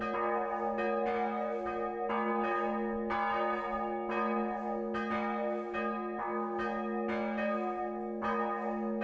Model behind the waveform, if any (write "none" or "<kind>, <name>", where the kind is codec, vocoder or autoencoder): none